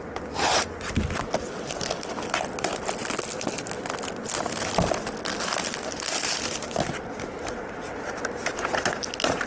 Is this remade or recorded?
recorded